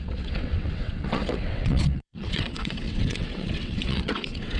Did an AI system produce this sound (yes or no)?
yes